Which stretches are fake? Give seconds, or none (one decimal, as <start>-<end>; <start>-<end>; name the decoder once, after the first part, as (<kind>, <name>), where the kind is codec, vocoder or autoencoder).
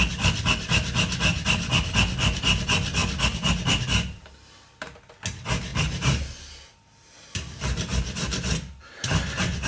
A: 5.7-7.3 (vocoder, BigVGAN v2)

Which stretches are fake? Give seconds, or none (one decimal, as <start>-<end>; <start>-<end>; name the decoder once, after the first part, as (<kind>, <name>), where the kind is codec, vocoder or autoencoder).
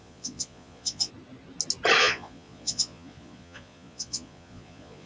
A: 0.0-1.1 (vocoder, Vocos); 2.0-5.1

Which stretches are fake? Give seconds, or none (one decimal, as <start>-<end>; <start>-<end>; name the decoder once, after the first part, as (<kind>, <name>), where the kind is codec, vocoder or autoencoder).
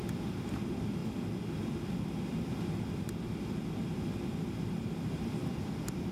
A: 0.0-1.0 (vocoder, BigVGAN v2); 4.6-6.1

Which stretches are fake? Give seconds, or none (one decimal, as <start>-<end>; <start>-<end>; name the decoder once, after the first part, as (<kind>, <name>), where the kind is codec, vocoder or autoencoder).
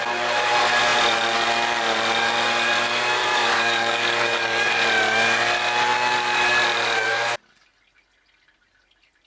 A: 3.2-4.7 (codec, DAC)